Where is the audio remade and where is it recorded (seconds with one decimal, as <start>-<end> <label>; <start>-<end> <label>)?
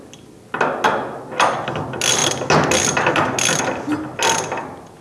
0.0-5.0 recorded